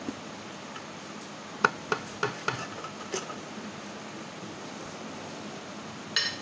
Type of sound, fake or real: real